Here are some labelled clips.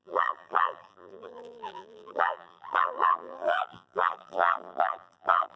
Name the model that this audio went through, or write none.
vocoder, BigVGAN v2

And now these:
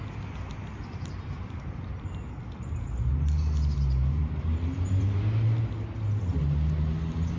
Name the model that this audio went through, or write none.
none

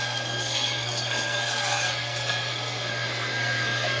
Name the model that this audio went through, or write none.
codec, SNAC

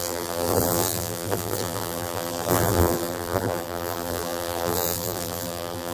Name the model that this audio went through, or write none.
vocoder, BigVGAN v2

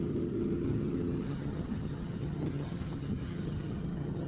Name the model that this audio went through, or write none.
vocoder, HiFi-GAN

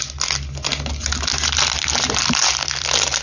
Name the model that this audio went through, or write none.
none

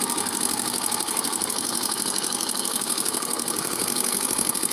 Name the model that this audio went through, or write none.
codec, SNAC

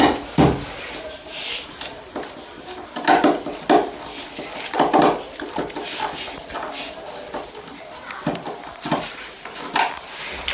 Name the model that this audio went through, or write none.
none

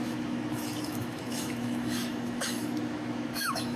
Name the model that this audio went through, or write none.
autoencoder, DAC-VAE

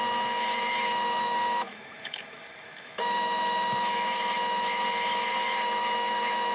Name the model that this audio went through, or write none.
autoencoder, DAC-VAE